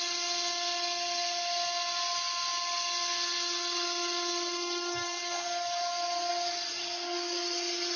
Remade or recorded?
recorded